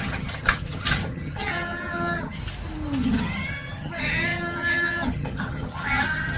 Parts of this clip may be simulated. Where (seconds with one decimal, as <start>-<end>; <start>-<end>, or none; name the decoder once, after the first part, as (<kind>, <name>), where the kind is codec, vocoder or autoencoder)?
0.0-2.4 (vocoder, HiFi-GAN); 3.0-6.4